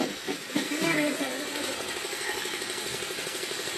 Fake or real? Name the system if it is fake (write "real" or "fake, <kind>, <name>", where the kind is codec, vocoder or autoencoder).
fake, codec, SNAC